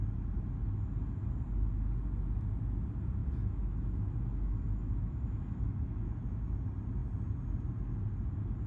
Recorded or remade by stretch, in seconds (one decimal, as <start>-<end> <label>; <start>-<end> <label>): 0.0-3.2 recorded; 3.2-6.4 remade; 6.4-8.7 recorded